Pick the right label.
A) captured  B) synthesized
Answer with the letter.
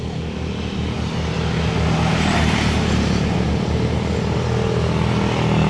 A